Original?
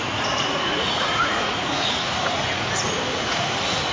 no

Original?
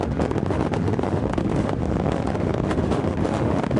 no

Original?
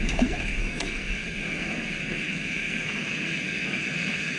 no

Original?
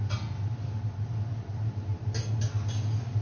yes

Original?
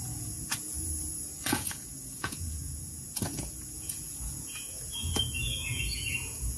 no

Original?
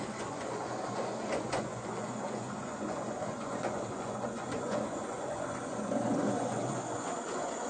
no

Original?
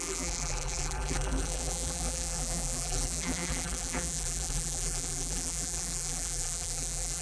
no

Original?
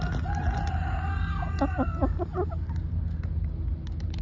yes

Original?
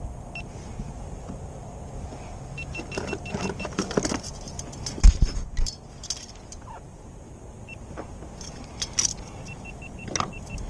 yes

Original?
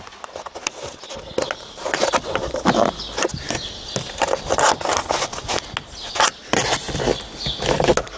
yes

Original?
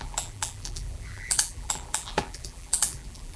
no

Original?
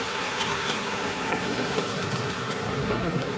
no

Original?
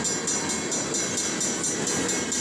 yes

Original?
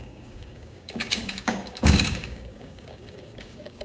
no